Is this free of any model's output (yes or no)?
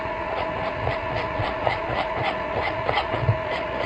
no